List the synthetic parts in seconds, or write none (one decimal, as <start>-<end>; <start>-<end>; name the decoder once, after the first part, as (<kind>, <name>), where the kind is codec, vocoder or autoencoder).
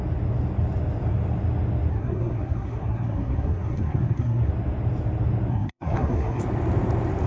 1.9-4.5 (codec, SNAC); 5.5-6.4